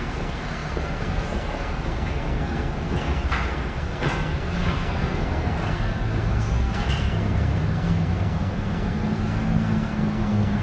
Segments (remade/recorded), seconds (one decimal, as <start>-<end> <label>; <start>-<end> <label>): 0.0-10.6 remade